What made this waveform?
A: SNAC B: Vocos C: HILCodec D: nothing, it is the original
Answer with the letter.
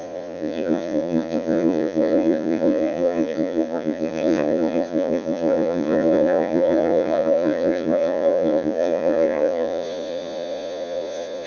B